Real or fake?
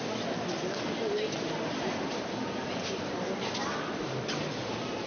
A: real